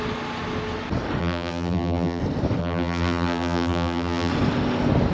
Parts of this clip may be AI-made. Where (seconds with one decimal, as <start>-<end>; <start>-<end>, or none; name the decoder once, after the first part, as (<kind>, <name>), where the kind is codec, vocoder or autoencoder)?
1.2-2.2 (vocoder, BigVGAN v2); 2.6-4.3